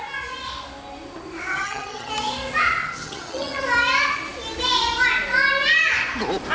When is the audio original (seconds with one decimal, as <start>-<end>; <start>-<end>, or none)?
0.0-1.5; 2.1-2.8; 3.6-6.5